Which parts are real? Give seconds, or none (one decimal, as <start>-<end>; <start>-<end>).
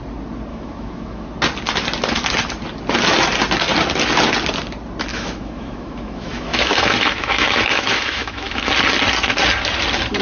0.0-0.5; 1.3-5.1; 8.7-10.2